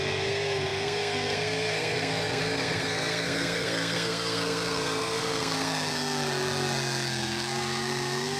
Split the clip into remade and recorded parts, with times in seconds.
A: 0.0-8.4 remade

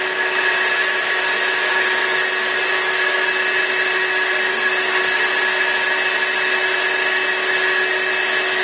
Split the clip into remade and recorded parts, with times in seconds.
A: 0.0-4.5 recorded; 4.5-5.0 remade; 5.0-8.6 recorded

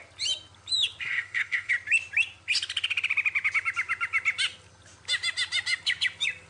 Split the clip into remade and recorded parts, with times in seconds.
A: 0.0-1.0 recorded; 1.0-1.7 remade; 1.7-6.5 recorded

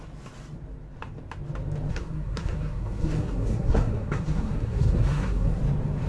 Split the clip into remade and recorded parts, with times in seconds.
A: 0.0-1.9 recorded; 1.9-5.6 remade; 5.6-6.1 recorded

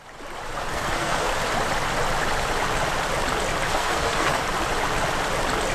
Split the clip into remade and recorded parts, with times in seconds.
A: 0.0-0.7 recorded; 0.7-1.3 remade; 1.3-3.7 recorded; 3.7-4.4 remade; 4.4-5.7 recorded

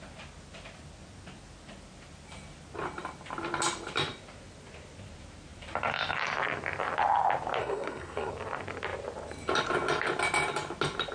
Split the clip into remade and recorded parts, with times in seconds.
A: 0.0-7.6 recorded; 7.6-8.3 remade; 8.3-11.1 recorded

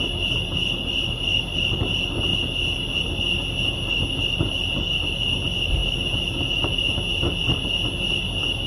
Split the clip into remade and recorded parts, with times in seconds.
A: 0.0-8.7 recorded